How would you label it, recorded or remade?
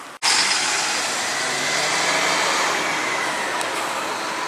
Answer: recorded